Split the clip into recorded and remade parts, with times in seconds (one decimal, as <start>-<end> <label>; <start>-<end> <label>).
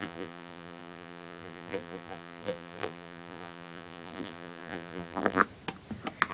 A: 0.0-5.4 remade; 5.4-6.3 recorded